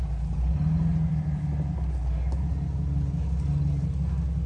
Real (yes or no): yes